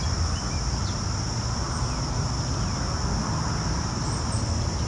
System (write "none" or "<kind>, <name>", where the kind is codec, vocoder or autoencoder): none